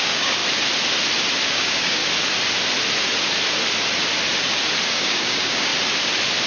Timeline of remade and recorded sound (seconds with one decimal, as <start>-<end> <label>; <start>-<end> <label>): 0.0-0.4 remade; 0.4-1.5 recorded; 1.5-2.0 remade; 2.0-4.9 recorded; 4.9-5.7 remade; 5.7-6.5 recorded